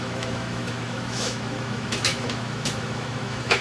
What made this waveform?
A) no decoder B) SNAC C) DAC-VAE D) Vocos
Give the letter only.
C